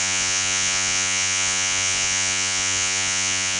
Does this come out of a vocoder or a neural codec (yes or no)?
yes